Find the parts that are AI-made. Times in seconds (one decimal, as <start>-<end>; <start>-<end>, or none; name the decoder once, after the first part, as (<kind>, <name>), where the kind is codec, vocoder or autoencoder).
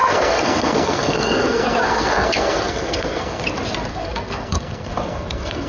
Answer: 0.0-3.4 (codec, SNAC); 3.9-5.7